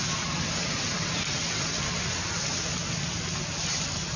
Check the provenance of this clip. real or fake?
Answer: real